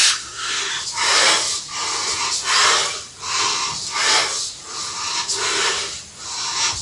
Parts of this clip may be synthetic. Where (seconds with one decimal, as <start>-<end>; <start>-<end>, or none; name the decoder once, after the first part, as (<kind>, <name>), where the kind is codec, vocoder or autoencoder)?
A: 0.0-0.7 (codec, SNAC)